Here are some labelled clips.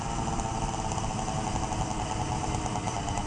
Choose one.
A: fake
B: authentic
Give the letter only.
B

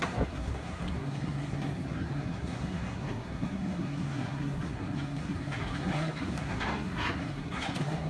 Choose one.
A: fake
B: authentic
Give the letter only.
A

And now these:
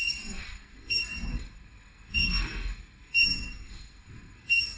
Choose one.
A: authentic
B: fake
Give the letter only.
B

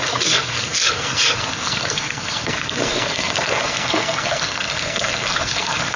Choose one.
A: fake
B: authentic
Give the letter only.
A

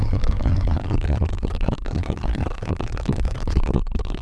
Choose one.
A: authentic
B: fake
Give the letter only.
B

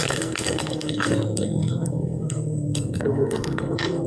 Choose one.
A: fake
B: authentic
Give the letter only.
A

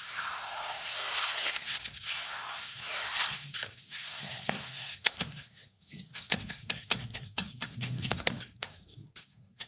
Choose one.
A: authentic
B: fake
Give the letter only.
B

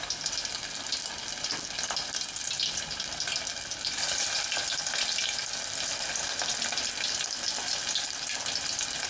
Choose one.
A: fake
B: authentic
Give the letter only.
B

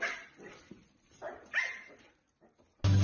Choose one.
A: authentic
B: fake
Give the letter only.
A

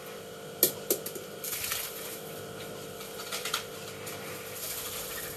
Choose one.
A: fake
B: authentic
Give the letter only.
B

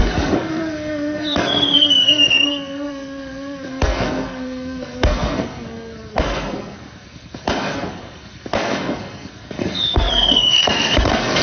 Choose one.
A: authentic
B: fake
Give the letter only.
B